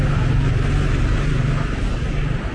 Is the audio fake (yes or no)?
no